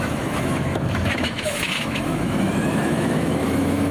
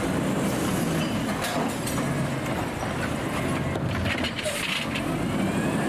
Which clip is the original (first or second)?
second